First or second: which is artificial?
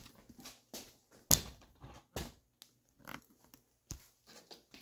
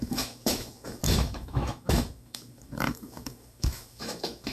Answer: second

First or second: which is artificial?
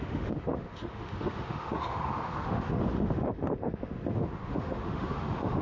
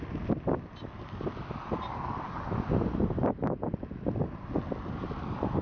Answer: first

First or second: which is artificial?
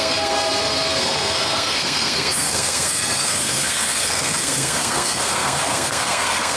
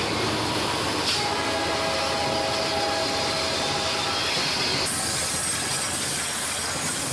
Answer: first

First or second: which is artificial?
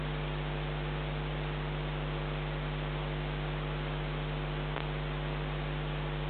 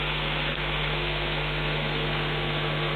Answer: second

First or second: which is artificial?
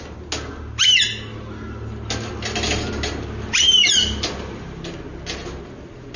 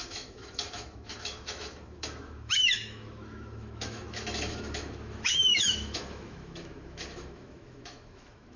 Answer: second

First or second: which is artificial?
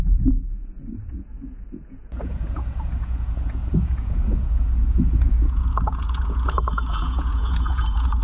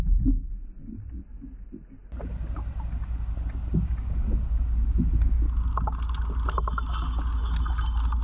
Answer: first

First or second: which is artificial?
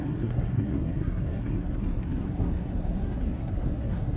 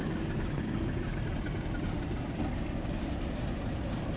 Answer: first